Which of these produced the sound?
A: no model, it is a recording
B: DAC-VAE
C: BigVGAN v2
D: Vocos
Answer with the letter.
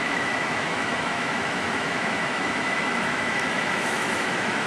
B